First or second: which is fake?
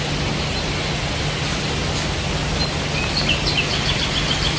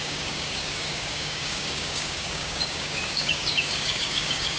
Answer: second